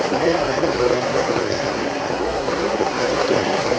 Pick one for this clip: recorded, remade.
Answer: remade